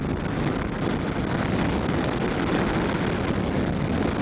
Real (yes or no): yes